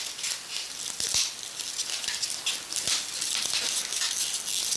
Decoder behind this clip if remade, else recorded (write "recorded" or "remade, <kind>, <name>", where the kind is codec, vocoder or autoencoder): recorded